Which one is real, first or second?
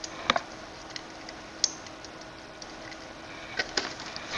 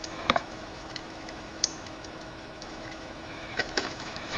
first